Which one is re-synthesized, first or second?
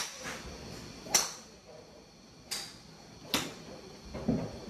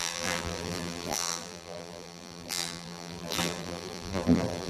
second